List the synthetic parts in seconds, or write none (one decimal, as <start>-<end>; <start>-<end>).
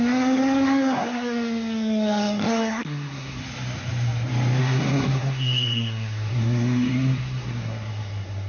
0.0-3.4; 4.6-8.5